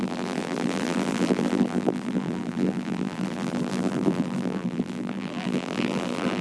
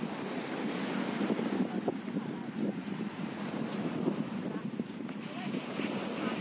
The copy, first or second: first